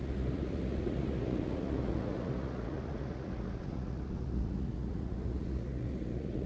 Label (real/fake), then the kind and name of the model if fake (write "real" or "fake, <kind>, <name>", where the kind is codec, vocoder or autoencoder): fake, vocoder, Vocos